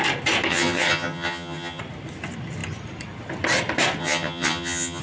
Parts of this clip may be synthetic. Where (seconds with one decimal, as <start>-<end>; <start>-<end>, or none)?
0.5-1.8; 4.0-5.0

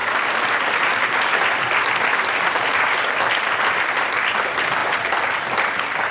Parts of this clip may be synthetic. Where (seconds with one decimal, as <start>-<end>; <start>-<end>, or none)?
none

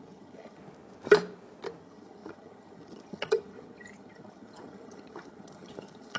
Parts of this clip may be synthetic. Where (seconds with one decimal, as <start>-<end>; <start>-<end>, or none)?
0.0-0.6; 1.8-6.2

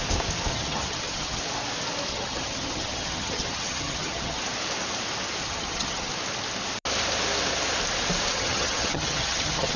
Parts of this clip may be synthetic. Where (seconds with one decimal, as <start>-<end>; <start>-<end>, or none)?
0.5-1.4; 2.1-4.4; 5.4-6.1; 8.3-9.8